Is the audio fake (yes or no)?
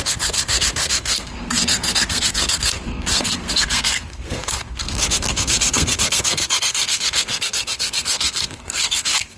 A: yes